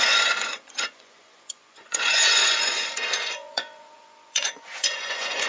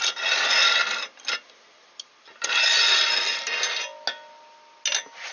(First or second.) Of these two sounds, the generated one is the first